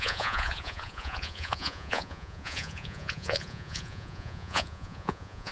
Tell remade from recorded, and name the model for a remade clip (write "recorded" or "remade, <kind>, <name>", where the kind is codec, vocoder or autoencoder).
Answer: remade, vocoder, Vocos